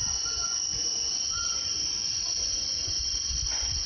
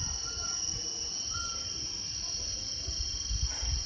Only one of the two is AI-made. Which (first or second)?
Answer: first